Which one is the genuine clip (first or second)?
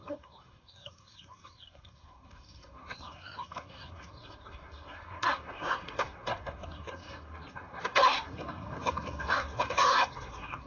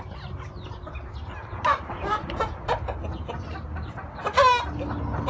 second